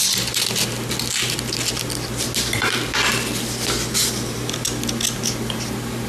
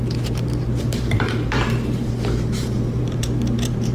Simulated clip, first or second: second